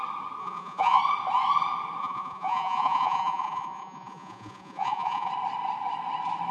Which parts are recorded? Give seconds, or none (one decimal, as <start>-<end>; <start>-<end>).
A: 0.0-0.4; 1.0-2.0; 5.3-6.5